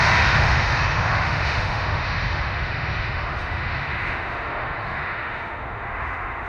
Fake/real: fake